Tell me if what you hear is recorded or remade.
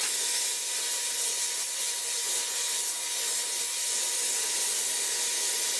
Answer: recorded